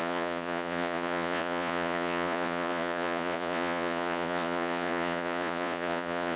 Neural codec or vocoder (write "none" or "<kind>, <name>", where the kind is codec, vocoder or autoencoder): vocoder, Vocos